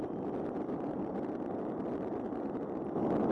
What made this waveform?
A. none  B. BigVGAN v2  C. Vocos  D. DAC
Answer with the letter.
B